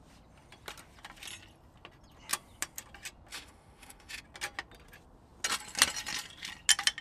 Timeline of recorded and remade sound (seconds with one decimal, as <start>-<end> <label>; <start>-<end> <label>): 0.0-3.3 recorded; 3.3-4.2 remade; 4.2-7.0 recorded